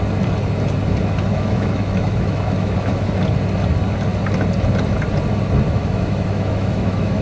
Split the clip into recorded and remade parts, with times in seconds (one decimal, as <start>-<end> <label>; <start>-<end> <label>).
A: 0.0-1.3 recorded; 1.3-3.2 remade; 3.2-5.7 recorded; 5.7-7.2 remade